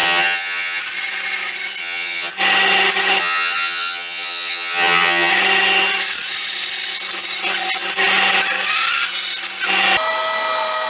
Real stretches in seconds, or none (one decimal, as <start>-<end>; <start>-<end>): 0.8-1.8; 2.3-3.2; 5.3-10.9